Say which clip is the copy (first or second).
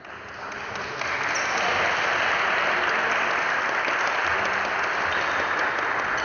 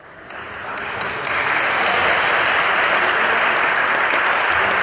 second